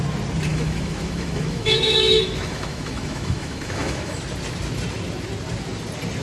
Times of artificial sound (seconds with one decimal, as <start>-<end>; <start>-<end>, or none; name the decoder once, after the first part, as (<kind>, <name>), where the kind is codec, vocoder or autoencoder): 0.5-4.2 (autoencoder, DAC-VAE)